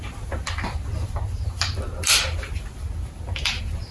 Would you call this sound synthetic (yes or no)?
no